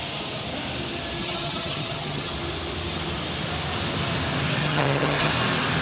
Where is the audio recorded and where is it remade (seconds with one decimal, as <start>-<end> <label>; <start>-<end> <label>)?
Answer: 0.0-1.2 recorded; 1.2-2.3 remade; 2.3-4.6 recorded; 4.6-5.3 remade; 5.3-5.8 recorded